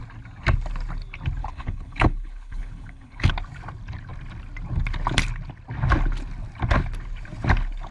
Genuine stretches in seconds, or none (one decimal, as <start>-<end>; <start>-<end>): 0.0-1.4; 3.3-7.9